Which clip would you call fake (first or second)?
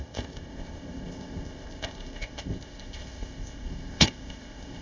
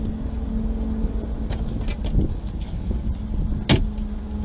first